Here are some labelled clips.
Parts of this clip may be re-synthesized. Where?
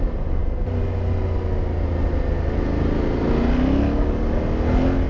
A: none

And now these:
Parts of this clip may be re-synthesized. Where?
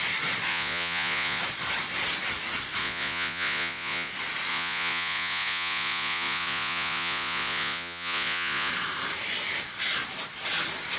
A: 0.5-1.4 (vocoder, Vocos); 2.8-4.1; 4.5-8.7